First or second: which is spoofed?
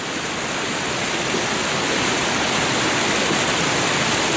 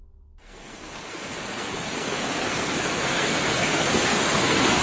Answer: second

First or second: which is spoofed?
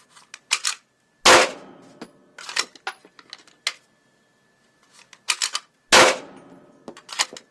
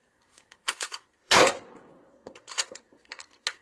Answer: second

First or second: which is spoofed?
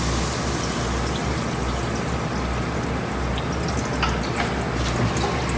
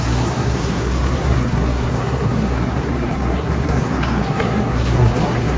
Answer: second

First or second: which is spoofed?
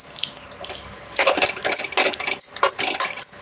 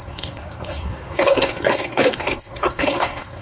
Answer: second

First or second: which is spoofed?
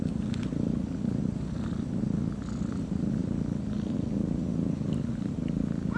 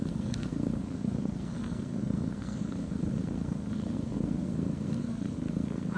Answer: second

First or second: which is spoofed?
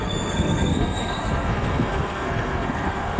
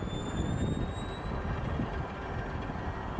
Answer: first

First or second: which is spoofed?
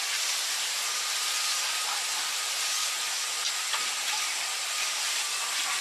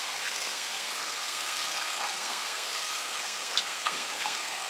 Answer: second